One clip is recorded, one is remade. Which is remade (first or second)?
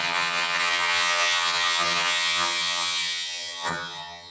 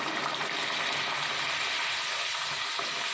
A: first